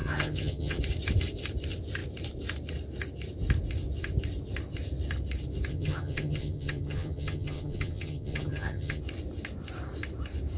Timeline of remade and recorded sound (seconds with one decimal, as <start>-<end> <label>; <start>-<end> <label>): 0.0-0.8 remade; 0.8-5.7 recorded; 5.7-9.0 remade; 9.0-10.6 recorded